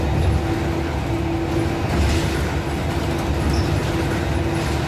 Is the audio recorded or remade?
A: recorded